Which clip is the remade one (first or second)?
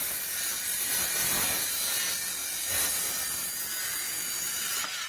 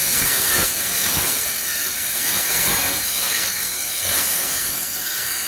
second